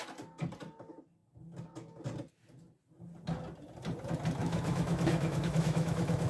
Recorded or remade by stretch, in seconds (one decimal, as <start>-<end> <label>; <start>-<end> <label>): 0.0-4.4 recorded; 4.4-6.3 remade